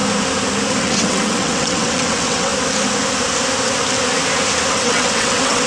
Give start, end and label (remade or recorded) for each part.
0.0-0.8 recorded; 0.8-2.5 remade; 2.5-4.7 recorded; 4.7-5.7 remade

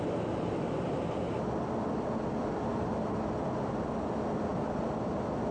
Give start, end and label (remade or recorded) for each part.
0.0-2.7 recorded; 2.7-3.7 remade; 3.7-4.5 recorded; 4.5-5.1 remade; 5.1-5.5 recorded

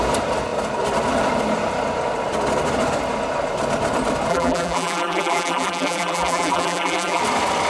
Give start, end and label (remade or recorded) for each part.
0.0-4.3 recorded; 4.3-7.2 remade; 7.2-7.7 recorded

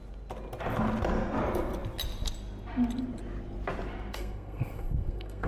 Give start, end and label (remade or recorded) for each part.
0.0-4.1 recorded; 4.1-5.5 remade